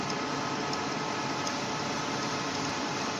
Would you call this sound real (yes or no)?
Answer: no